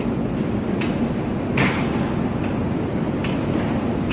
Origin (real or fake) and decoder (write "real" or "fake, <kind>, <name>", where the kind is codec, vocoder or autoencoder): real